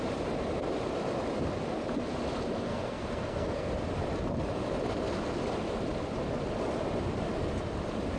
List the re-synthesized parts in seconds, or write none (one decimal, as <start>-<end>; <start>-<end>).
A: 2.7-3.7